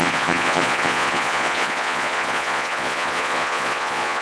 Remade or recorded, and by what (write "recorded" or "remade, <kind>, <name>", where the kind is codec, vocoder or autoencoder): remade, vocoder, Vocos